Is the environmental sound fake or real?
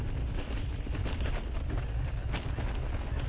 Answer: real